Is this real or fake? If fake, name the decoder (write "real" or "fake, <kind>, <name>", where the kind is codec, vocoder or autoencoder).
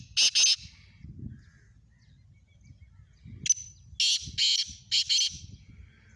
real